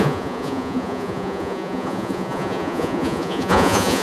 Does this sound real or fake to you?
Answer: fake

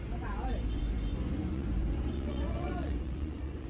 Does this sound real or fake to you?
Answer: fake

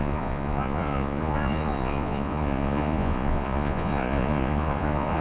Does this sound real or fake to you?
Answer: fake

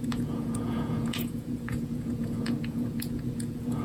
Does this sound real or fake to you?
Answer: fake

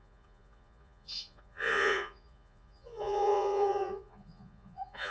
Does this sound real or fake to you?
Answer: fake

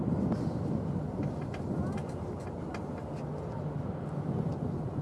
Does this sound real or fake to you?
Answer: real